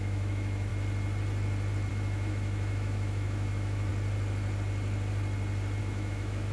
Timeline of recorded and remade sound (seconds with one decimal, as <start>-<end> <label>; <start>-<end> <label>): 0.0-0.7 remade; 0.7-1.9 recorded; 1.9-3.9 remade; 3.9-5.8 recorded; 5.8-6.5 remade